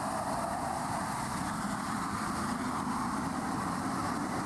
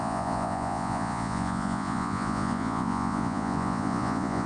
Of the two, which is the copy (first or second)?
second